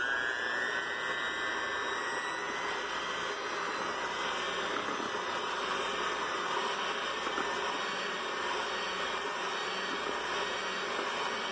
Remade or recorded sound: recorded